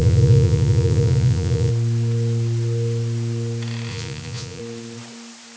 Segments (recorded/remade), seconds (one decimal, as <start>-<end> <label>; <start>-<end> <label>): 0.0-1.7 remade; 1.7-3.9 recorded; 3.9-4.6 remade; 4.6-5.6 recorded